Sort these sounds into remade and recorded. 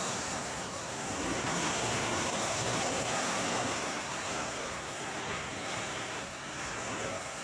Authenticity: remade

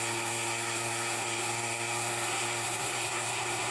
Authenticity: remade